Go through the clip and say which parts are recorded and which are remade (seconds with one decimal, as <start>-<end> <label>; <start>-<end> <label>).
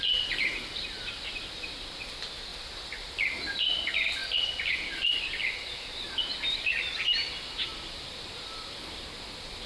0.0-0.5 remade; 0.5-1.3 recorded; 1.3-2.5 remade; 2.5-3.5 recorded; 3.5-9.7 remade